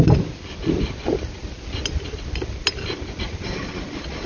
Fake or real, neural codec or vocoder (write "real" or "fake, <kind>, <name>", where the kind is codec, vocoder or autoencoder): real